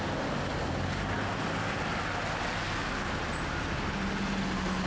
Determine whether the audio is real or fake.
real